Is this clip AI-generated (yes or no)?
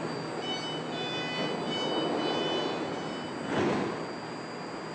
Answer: no